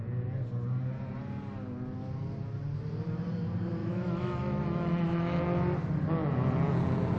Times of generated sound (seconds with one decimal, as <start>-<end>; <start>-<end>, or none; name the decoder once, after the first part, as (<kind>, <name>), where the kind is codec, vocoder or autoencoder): 3.8-5.4 (autoencoder, DAC-VAE)